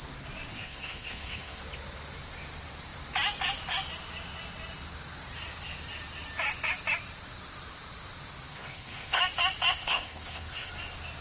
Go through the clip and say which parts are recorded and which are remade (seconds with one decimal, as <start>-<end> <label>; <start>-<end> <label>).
0.0-0.5 recorded; 0.5-1.6 remade; 1.6-8.5 recorded; 8.5-9.2 remade; 9.2-9.7 recorded; 9.7-10.7 remade; 10.7-11.2 recorded